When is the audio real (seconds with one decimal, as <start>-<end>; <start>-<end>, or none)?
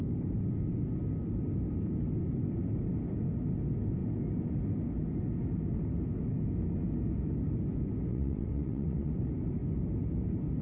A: 0.0-8.1; 9.1-10.6